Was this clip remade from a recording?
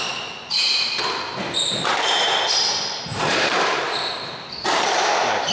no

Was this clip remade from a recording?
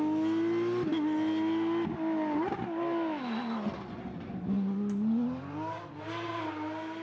no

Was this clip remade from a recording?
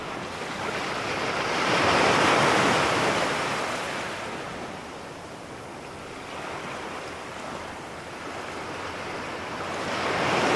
no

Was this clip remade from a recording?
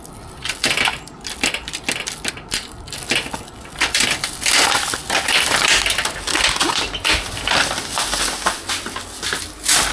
no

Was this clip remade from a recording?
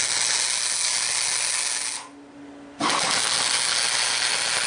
no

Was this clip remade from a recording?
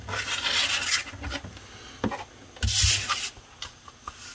no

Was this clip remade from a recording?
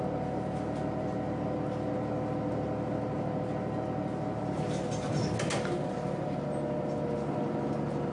no